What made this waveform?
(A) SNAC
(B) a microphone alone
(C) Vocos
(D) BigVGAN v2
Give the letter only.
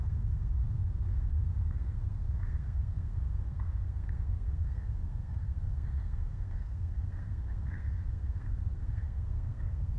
A